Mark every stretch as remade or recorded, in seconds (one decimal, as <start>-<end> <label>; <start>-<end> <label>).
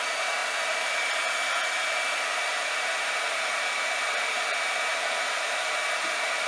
0.0-6.5 recorded